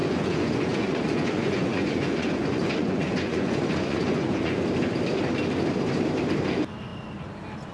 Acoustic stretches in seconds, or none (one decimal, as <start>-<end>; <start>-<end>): 4.6-7.7